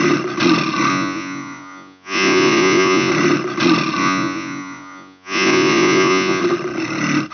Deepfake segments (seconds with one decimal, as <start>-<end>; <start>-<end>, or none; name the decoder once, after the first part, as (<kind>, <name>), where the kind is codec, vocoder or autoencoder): 0.9-3.1 (vocoder, Vocos); 4.0-6.4